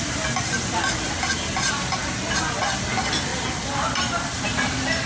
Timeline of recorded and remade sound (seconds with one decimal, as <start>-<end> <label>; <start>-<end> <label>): 0.0-5.1 recorded